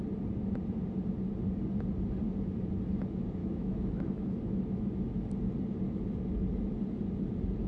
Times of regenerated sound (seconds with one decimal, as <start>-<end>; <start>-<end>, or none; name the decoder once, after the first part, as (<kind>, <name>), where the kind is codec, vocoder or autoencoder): 3.4-5.3 (autoencoder, DAC-VAE)